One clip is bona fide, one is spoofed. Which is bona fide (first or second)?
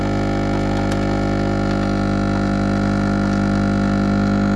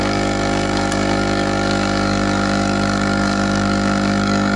first